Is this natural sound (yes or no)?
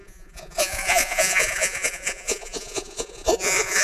no